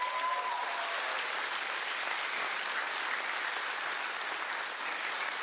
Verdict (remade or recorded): recorded